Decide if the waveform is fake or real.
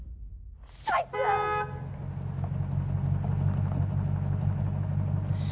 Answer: real